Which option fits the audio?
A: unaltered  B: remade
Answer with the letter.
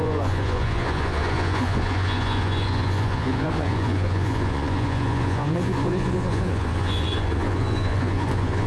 B